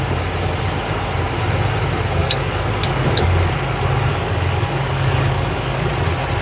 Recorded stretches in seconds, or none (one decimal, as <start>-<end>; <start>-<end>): 0.0-2.2; 3.5-4.1; 5.9-6.4